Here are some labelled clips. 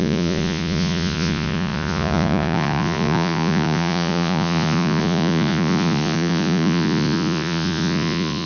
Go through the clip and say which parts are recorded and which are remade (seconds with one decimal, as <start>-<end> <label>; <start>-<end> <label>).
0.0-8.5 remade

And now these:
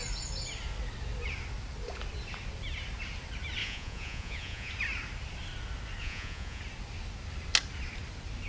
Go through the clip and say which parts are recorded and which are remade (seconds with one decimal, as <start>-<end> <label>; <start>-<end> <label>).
0.0-3.6 recorded; 3.6-4.7 remade; 4.7-6.0 recorded; 6.0-6.6 remade; 6.6-8.5 recorded

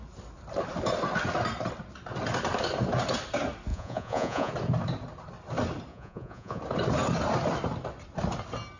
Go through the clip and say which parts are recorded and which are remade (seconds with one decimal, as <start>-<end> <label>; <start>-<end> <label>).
0.0-3.7 recorded; 3.7-4.5 remade; 4.5-5.9 recorded; 5.9-6.6 remade; 6.6-8.8 recorded

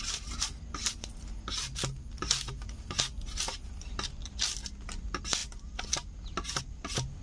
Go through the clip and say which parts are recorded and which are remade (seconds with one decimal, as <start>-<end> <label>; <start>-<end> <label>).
0.0-7.2 recorded